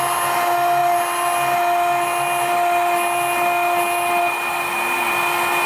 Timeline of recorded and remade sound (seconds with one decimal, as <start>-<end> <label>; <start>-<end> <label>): 0.0-5.7 recorded